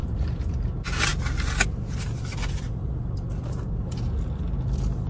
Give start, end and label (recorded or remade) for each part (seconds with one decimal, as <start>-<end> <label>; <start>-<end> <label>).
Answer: 0.0-0.5 remade; 0.5-5.1 recorded